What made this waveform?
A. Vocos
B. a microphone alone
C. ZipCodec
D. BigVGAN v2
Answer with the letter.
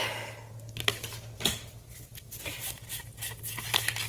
B